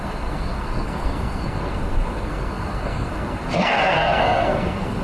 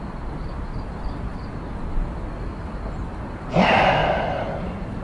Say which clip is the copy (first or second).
first